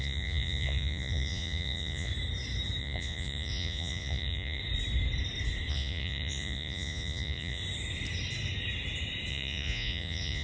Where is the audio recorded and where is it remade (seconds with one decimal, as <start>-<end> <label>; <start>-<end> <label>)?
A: 0.0-2.1 remade; 2.1-2.8 recorded; 2.8-4.6 remade; 4.6-5.7 recorded; 5.7-7.6 remade; 7.6-9.3 recorded; 9.3-10.4 remade